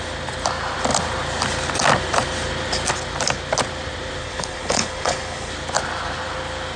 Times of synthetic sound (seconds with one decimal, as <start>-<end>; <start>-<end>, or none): 4.2-5.5